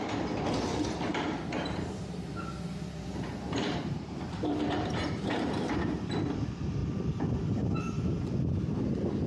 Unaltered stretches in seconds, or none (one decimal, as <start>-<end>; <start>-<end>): 0.0-1.1; 6.3-9.3